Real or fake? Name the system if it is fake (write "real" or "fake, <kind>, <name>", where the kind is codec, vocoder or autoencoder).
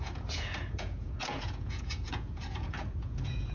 fake, vocoder, Vocos